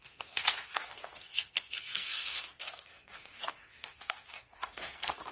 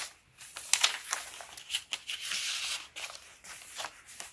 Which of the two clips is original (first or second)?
second